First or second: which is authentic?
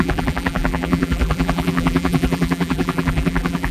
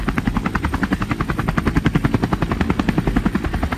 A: second